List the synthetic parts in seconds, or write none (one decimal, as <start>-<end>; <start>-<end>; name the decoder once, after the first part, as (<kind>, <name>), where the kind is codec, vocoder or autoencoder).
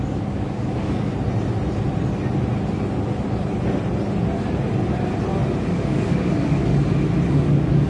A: 0.0-1.1 (codec, DAC); 5.7-6.7; 7.3-7.9